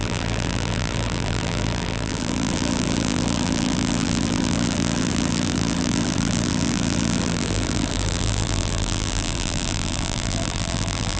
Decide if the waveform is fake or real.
fake